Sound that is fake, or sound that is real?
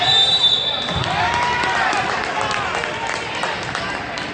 real